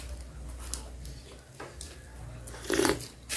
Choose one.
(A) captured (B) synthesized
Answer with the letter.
A